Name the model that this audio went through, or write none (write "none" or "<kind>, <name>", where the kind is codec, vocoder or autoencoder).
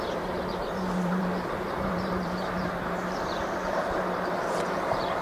vocoder, BigVGAN v2